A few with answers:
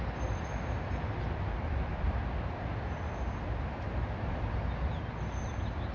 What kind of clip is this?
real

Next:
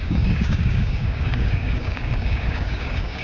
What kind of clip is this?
fake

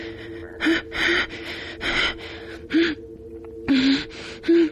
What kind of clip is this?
real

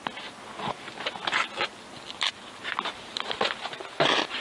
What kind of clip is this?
real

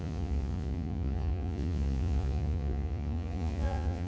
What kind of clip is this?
fake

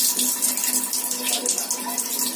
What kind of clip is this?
real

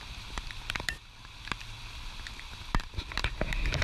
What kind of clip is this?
fake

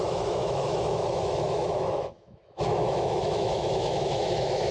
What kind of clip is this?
fake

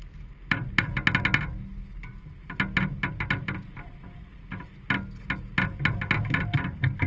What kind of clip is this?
real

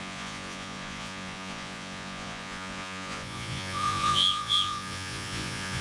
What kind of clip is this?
fake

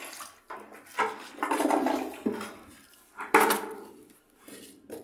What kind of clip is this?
real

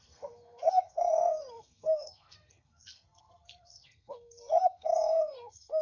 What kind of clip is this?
fake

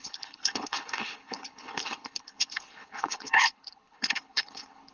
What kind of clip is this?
fake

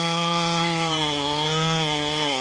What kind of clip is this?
fake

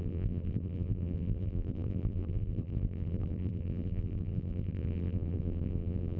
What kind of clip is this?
fake